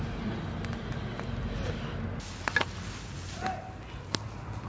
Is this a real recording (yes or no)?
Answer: yes